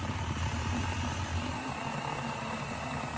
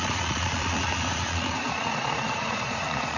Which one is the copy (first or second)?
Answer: second